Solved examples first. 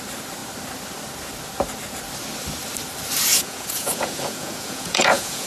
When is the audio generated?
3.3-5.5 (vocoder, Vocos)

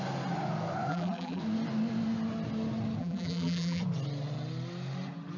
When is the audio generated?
0.9-1.4 (vocoder, BigVGAN v2); 3.0-3.8

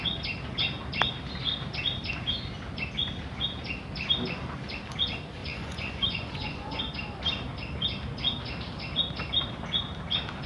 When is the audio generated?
5.4-6.8 (vocoder, Vocos)

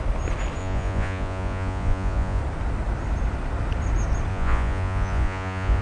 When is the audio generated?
0.6-2.4 (vocoder, Vocos); 4.3-5.8

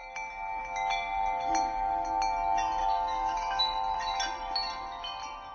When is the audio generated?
2.8-3.6 (codec, DAC)

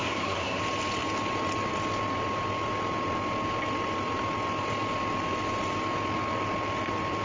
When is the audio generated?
0.0-0.6 (codec, SNAC)

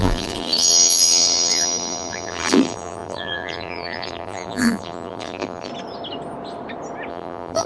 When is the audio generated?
0.0-5.7 (vocoder, BigVGAN v2); 7.1-7.7

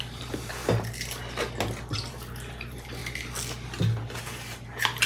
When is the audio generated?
0.0-0.6 (vocoder, BigVGAN v2); 2.1-3.0; 4.2-5.1